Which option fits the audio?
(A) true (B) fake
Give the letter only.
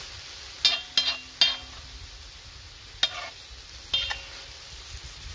A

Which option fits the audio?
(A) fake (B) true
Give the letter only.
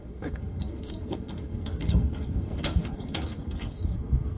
A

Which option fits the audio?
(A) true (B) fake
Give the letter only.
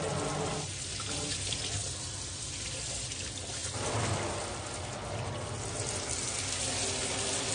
A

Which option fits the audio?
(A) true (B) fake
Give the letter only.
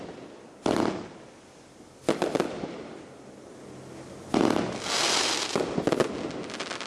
A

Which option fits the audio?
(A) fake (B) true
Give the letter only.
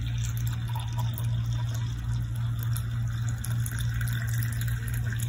B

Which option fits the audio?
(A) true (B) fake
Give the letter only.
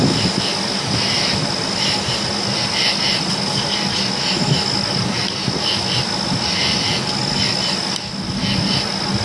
A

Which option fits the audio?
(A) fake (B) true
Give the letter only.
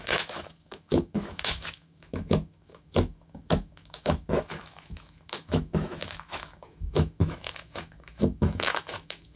A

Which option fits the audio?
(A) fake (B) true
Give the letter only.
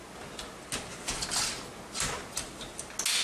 B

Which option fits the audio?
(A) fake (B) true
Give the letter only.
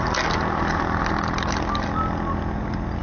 B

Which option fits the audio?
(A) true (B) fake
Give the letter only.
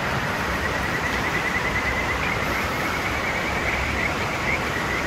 B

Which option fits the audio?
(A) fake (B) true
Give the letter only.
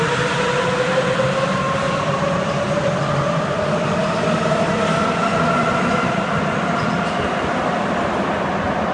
A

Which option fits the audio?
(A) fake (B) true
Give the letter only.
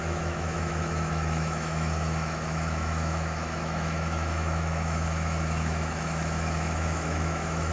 A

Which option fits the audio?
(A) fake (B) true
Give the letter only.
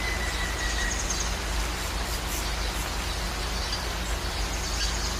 B